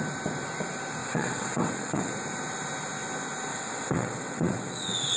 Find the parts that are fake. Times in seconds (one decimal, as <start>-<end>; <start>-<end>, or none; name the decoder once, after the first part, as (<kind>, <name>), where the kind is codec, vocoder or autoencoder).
1.0-2.1 (vocoder, WaveNeXt); 3.5-5.2